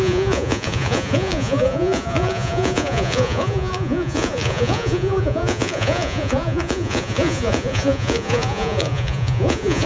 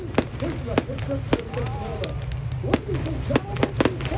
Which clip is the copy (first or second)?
first